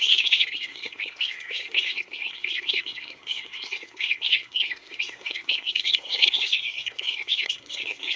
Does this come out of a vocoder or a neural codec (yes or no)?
yes